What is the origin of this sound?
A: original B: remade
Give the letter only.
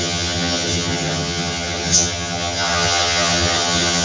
B